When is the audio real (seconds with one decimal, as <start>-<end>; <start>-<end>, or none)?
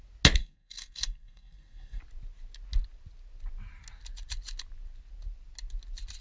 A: 0.0-0.4; 2.0-6.2